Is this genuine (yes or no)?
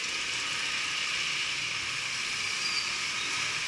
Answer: yes